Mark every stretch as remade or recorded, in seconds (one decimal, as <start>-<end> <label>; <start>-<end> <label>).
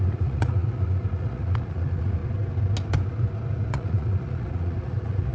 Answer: 0.0-2.2 remade; 2.2-3.7 recorded; 3.7-5.3 remade